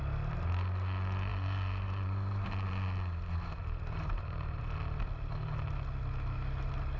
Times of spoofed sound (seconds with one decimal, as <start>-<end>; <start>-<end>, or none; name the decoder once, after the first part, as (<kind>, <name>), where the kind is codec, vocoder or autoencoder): 1.3-4.6 (vocoder, BigVGAN v2)